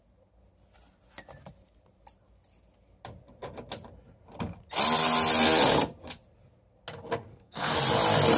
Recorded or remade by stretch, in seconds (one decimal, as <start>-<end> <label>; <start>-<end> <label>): 0.0-7.3 recorded; 7.3-7.8 remade; 7.8-8.4 recorded